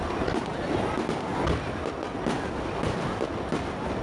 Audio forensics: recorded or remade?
recorded